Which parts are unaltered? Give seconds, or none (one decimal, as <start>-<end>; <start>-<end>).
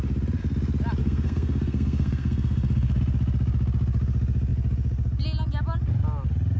0.0-1.0; 3.0-6.6